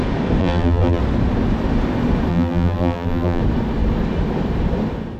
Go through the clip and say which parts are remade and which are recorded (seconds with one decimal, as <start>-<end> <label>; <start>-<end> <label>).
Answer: 0.0-0.4 recorded; 0.4-1.0 remade; 1.0-2.3 recorded; 2.3-3.4 remade; 3.4-5.2 recorded